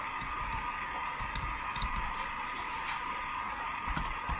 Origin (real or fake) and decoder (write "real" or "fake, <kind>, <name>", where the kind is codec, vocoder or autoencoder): real